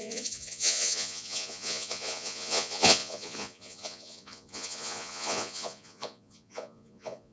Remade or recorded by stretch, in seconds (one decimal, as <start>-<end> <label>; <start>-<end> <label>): 0.0-7.3 remade